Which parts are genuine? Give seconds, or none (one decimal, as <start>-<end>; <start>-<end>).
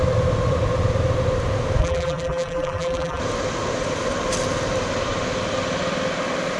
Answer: 0.0-1.8; 3.2-6.6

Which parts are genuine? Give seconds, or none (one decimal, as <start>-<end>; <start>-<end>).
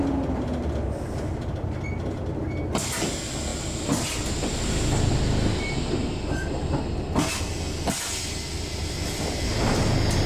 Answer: 0.0-10.3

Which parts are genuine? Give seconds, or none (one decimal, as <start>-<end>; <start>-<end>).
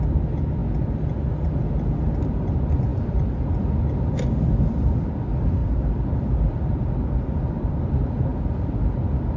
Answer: 0.0-2.9; 4.3-5.6; 7.8-8.3; 8.8-9.4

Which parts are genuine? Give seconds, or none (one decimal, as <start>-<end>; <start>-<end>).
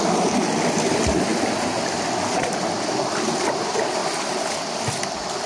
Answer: 0.0-1.3; 2.0-5.5